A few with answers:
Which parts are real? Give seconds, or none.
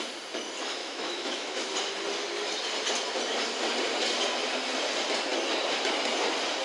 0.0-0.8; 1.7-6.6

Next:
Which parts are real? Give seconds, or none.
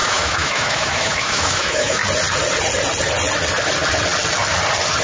2.0-5.0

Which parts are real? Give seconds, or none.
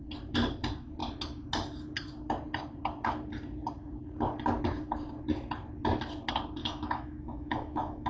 0.0-6.6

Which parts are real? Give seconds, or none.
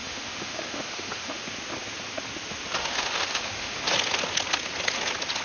1.4-2.8; 3.8-5.4